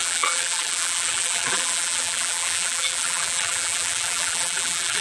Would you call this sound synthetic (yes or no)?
yes